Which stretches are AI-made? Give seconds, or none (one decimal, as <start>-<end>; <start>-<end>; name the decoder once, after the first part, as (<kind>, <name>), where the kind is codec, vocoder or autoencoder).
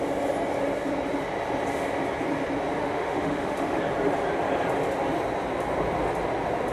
2.8-3.8 (autoencoder, DAC-VAE)